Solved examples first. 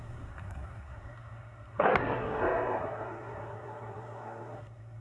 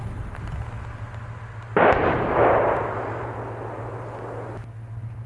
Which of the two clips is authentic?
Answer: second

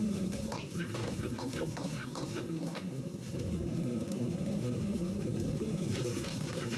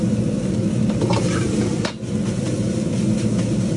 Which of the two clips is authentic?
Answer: second